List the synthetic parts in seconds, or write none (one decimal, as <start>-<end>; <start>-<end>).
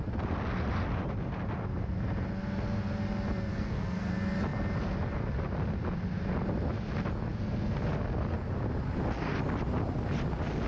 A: 3.5-4.1